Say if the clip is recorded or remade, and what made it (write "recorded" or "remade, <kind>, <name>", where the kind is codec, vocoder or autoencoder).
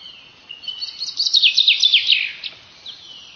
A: recorded